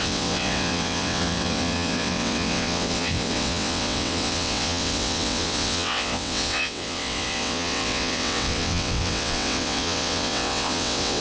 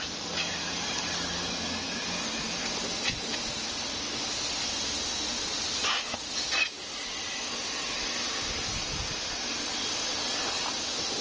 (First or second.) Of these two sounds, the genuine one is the second